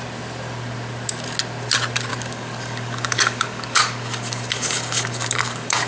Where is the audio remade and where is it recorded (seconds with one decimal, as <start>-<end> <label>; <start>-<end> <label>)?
0.0-2.1 recorded; 2.1-5.9 remade